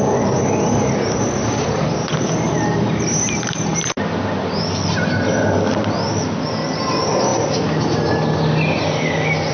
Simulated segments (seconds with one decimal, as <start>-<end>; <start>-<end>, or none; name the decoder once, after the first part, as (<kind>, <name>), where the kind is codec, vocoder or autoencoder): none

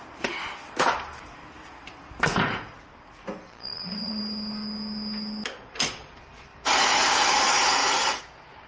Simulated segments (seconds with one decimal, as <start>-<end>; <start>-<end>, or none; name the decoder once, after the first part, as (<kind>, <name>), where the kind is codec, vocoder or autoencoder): 3.5-4.2 (vocoder, Vocos)

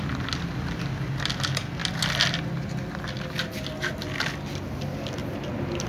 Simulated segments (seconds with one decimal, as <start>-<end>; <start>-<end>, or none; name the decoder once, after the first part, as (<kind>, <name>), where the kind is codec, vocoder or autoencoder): none

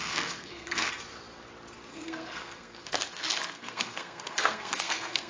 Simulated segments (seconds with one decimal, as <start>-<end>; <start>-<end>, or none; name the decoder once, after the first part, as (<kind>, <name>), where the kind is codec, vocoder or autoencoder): 0.0-0.9 (codec, SNAC); 1.9-5.3